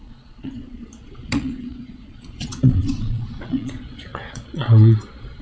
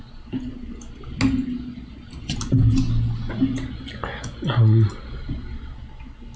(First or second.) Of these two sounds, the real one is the second